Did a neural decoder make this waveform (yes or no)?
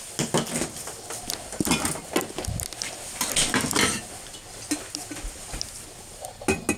no